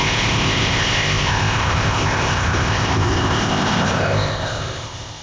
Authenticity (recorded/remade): remade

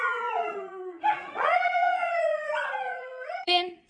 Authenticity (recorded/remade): remade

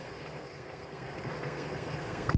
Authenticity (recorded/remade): remade